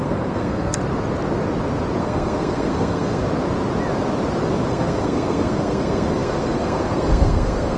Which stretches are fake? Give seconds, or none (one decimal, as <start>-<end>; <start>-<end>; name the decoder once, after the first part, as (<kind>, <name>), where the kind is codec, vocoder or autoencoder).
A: 0.0-0.8 (codec, SNAC); 2.0-3.2; 4.7-7.8